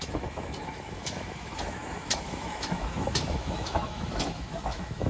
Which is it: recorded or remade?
remade